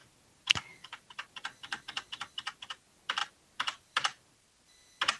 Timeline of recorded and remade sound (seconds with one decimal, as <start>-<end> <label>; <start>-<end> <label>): 0.0-5.2 recorded